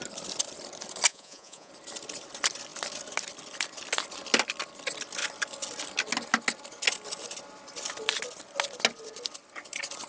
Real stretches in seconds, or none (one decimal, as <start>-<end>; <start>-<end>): 0.0-1.1; 1.7-10.1